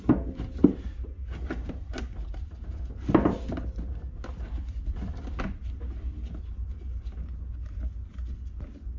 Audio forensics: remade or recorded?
recorded